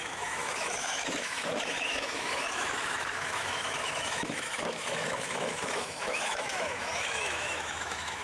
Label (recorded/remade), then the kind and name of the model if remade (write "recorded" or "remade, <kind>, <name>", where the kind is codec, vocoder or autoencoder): remade, autoencoder, DAC-VAE